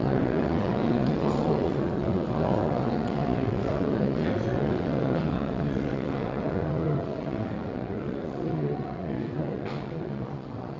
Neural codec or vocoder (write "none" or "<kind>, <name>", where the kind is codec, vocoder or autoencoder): vocoder, WaveNeXt